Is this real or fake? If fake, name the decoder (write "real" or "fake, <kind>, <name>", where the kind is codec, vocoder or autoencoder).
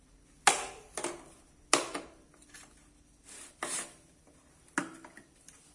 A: real